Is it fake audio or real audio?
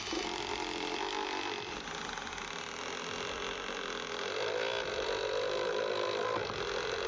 real